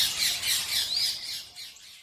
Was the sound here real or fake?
real